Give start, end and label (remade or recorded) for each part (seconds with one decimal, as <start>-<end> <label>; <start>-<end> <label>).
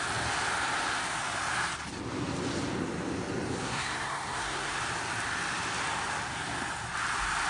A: 0.0-3.6 recorded; 3.6-4.8 remade; 4.8-7.5 recorded